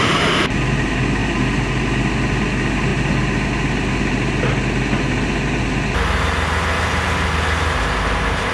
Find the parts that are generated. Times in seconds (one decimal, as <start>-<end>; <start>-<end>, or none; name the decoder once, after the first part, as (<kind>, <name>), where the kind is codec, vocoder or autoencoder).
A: none